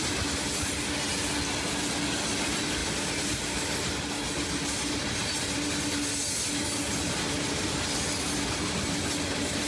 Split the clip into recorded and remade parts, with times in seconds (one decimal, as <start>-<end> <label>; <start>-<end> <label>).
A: 0.0-9.7 recorded